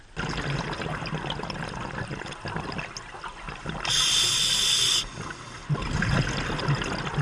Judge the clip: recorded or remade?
recorded